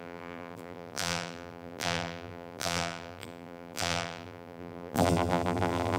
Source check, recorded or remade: remade